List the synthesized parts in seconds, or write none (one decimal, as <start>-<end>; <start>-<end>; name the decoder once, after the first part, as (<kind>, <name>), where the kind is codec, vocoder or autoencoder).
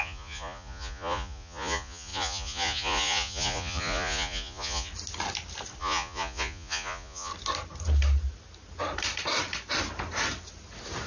0.0-4.9 (vocoder, Vocos); 5.8-7.3